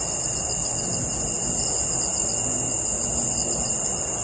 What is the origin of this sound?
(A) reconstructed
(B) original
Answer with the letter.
B